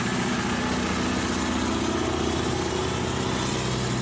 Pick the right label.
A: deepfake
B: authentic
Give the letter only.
B